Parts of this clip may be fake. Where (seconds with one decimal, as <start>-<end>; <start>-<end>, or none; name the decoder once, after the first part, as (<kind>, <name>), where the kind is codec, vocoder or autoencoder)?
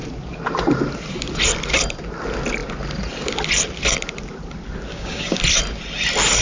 4.9-5.4 (codec, DAC)